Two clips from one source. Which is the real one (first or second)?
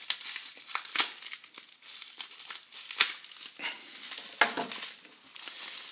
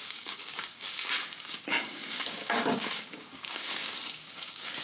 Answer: first